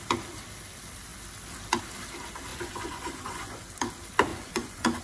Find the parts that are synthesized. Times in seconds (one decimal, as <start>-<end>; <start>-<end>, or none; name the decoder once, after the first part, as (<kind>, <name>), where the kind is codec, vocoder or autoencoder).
2.5-3.6 (vocoder, Vocos); 4.3-5.0